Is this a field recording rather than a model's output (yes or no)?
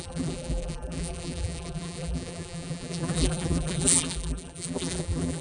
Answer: no